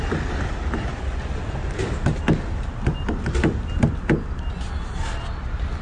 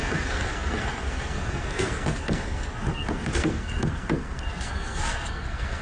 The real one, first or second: first